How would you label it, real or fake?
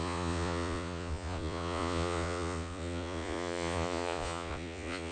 fake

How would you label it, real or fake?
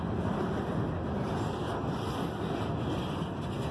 real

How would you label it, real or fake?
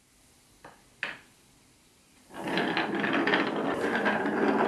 real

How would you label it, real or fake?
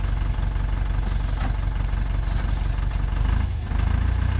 real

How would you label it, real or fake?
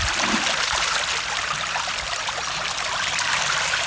real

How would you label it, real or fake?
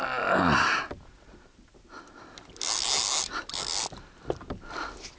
real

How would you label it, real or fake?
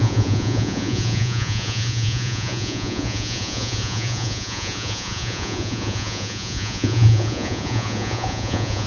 fake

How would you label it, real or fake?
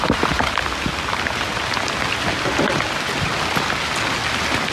real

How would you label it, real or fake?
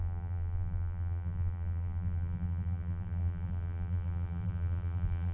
fake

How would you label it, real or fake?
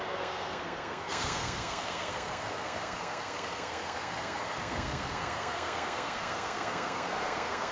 fake